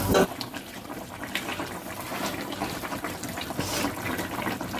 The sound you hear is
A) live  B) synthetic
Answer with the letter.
B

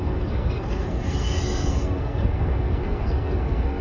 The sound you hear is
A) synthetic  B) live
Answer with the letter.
A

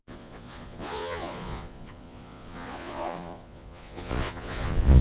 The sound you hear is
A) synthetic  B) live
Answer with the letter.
A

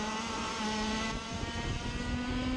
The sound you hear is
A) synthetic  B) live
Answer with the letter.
B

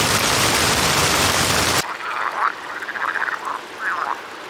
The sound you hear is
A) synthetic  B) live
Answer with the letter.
B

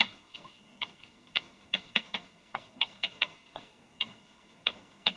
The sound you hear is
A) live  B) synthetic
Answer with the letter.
B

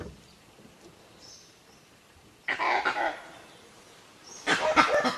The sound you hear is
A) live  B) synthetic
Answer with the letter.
A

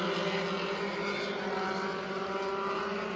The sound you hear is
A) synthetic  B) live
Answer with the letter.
B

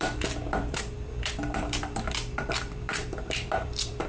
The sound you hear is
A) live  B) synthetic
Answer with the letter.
B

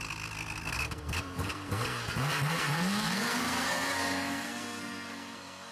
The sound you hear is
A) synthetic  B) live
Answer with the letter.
A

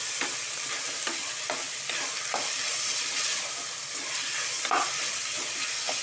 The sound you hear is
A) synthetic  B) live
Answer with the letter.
B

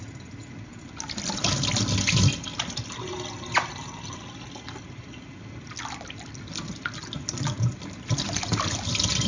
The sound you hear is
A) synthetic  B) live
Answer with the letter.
B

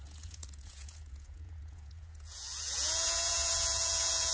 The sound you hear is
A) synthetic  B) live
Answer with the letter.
A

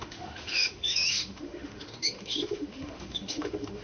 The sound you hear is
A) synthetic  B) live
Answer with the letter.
A